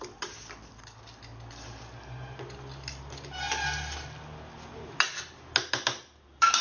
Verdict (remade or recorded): recorded